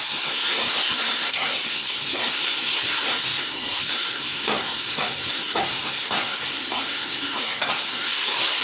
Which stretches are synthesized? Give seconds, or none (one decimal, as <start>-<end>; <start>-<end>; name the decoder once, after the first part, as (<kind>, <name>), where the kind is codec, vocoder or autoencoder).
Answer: 0.0-8.6 (codec, SNAC)